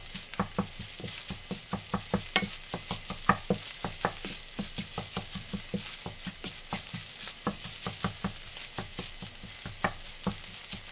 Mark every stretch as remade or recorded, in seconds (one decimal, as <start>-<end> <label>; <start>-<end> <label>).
0.0-10.9 recorded